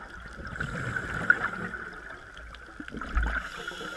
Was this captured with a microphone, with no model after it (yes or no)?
yes